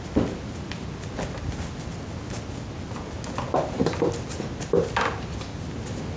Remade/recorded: recorded